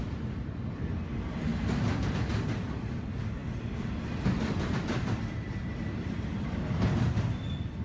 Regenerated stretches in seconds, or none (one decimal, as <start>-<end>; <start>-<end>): none